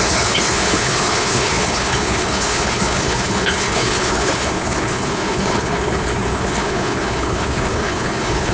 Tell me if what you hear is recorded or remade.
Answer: remade